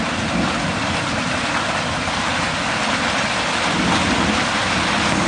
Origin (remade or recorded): recorded